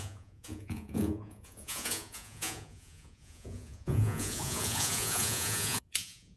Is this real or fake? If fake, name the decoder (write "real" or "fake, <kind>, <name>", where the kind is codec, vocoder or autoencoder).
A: fake, vocoder, Vocos